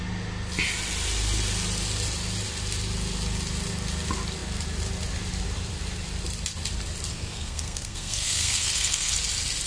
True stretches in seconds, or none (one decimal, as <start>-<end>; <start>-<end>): 0.0-7.1; 9.1-9.7